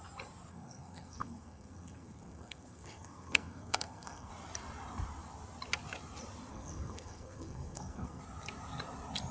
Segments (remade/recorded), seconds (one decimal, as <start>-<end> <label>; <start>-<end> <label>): 0.0-0.5 recorded; 0.5-4.3 remade; 4.3-6.5 recorded; 6.5-8.2 remade; 8.2-9.3 recorded